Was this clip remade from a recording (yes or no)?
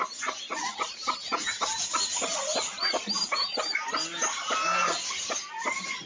no